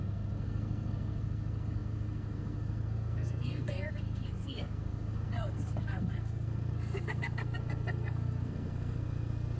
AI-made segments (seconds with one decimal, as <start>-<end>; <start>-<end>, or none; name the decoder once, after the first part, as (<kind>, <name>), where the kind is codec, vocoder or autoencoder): 0.0-9.6 (codec, SNAC)